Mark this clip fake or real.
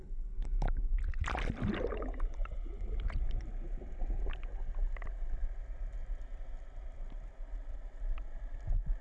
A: real